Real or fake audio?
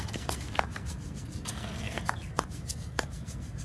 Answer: fake